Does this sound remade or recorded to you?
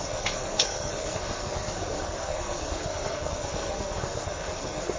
remade